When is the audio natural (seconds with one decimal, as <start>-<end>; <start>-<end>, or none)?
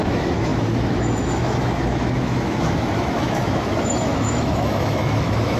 none